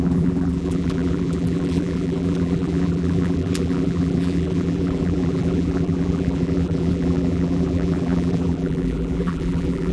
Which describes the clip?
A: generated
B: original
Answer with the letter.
A